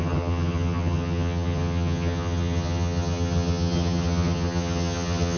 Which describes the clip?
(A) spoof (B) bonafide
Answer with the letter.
A